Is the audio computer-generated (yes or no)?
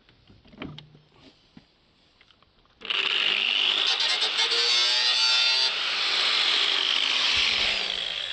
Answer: no